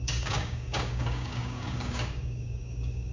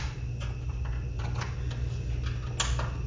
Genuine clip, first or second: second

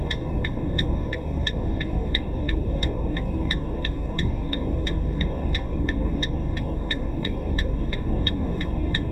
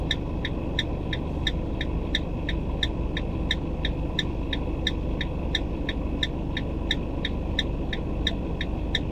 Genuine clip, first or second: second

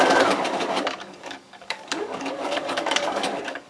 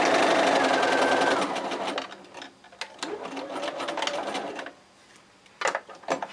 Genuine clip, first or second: second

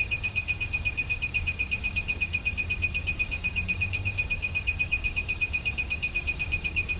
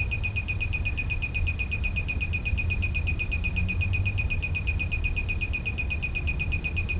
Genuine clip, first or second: second